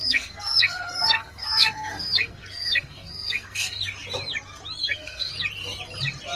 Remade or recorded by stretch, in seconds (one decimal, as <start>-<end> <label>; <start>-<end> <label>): 0.0-3.8 remade; 3.8-4.8 recorded; 4.8-5.3 remade; 5.3-6.4 recorded